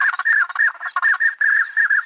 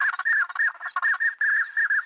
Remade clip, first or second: first